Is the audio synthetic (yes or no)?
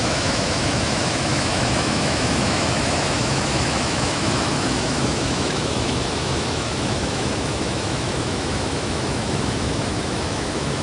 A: yes